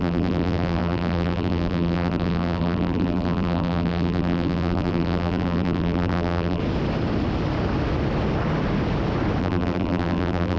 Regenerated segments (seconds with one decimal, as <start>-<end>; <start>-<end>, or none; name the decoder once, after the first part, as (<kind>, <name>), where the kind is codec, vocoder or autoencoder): 0.0-6.6 (vocoder, BigVGAN v2); 9.4-10.6